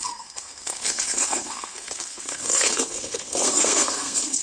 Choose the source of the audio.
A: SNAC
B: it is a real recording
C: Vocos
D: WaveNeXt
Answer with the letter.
A